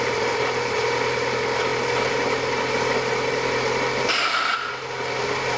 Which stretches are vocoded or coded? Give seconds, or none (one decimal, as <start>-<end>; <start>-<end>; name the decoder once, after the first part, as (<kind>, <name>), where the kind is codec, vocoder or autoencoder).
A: none